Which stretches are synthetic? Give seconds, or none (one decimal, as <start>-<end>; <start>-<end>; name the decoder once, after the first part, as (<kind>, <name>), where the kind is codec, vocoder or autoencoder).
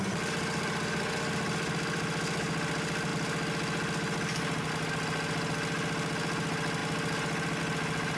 none